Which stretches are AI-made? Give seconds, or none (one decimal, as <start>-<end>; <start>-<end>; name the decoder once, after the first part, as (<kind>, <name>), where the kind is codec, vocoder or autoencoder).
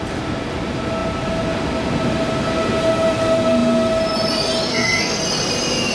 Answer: 4.7-5.2 (codec, SNAC)